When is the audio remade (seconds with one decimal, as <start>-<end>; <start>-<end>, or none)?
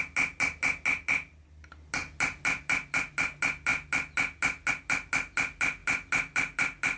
none